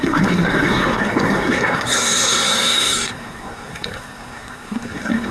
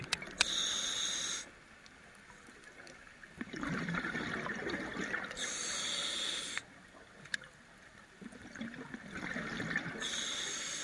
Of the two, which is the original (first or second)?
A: second